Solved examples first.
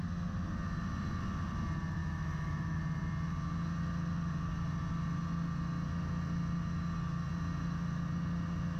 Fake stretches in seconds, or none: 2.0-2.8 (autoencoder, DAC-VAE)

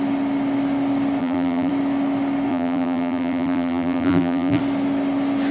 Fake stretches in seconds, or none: 1.2-1.7 (vocoder, BigVGAN v2); 2.5-4.6

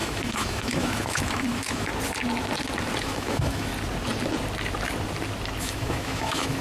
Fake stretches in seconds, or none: 0.0-1.9 (autoencoder, DAC-VAE); 3.0-3.7; 5.6-6.6

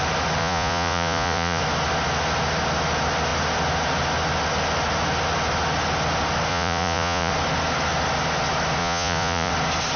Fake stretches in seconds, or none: 0.4-1.6 (vocoder, Vocos); 6.5-7.3; 8.8-9.5

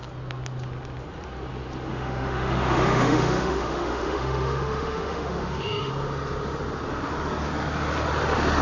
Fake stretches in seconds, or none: 1.9-5.9 (autoencoder, DAC-VAE)